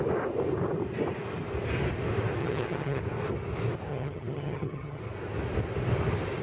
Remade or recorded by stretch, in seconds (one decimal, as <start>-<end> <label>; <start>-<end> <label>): 0.0-2.4 recorded; 2.4-3.0 remade; 3.0-3.9 recorded; 3.9-5.0 remade; 5.0-6.4 recorded